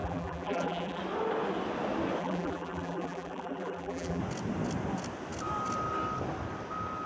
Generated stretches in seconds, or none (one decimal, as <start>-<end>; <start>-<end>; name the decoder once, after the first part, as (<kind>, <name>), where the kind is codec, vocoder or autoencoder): 0.0-1.0 (vocoder, BigVGAN v2); 2.2-4.2

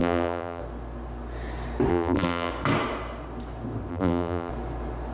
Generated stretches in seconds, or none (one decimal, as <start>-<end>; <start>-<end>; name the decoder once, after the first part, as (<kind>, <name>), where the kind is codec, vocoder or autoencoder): 0.0-0.6 (vocoder, BigVGAN v2); 1.9-2.5; 3.9-4.5

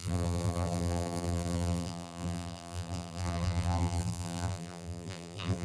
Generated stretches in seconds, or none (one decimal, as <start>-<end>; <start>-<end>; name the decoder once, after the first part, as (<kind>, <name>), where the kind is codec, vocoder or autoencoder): 0.0-5.6 (vocoder, BigVGAN v2)